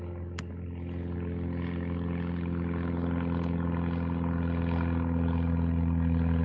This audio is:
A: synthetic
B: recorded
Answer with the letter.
B